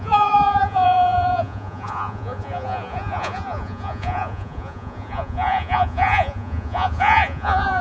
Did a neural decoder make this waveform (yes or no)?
yes